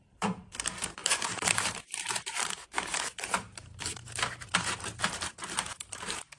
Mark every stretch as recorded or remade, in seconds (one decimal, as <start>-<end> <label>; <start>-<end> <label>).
0.0-6.4 remade